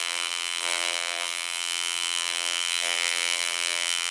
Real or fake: fake